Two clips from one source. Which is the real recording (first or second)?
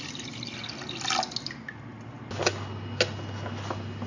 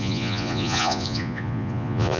first